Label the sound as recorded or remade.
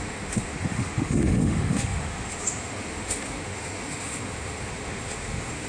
remade